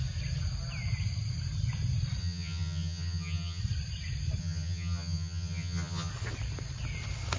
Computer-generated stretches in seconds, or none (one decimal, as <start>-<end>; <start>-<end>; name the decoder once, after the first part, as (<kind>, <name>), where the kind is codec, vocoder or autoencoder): 2.2-3.6 (vocoder, HiFi-GAN); 4.4-6.1